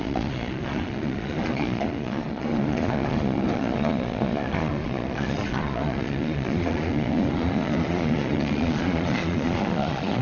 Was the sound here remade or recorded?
remade